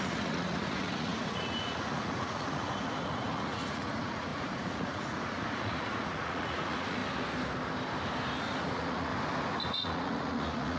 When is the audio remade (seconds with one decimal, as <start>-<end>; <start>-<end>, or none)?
0.0-7.0; 8.4-9.1; 9.6-10.8